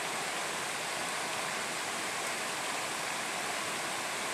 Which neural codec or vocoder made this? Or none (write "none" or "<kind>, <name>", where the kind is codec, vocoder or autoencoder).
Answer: none